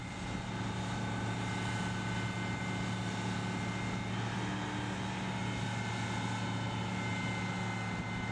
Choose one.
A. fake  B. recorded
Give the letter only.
B